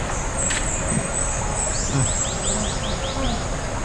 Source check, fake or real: real